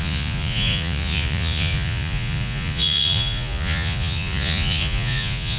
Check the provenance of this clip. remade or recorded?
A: remade